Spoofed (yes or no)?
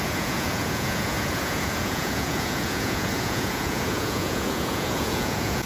yes